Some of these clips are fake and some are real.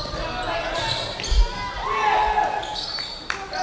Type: real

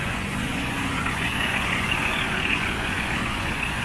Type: fake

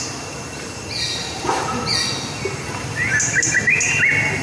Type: real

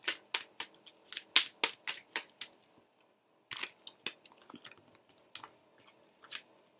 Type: real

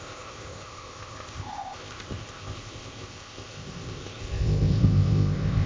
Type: fake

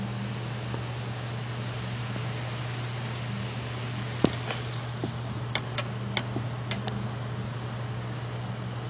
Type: real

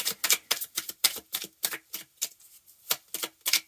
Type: real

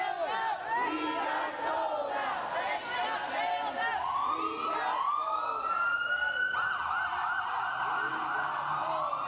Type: real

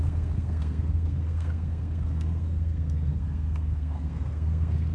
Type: fake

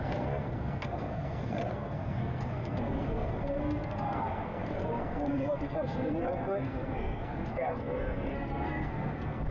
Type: fake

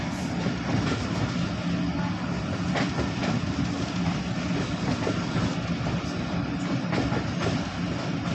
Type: real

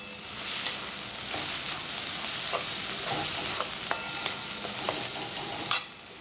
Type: real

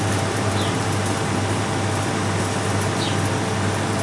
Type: real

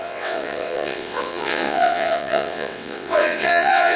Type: fake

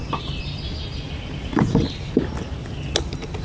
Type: real